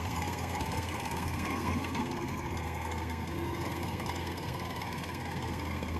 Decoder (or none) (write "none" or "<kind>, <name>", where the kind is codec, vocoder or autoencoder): codec, SNAC